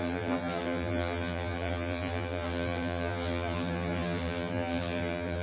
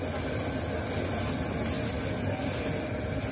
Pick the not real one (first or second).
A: first